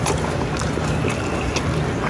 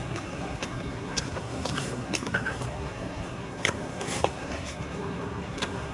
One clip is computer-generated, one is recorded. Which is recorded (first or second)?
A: first